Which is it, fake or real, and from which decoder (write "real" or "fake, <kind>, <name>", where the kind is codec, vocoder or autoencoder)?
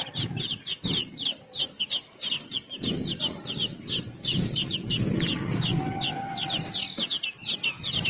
real